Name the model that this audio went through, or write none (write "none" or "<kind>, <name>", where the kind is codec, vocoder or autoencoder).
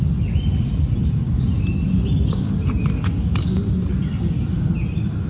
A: none